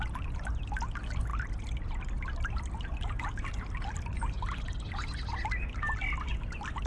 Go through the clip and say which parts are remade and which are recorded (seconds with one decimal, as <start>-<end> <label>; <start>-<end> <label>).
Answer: 0.0-6.9 recorded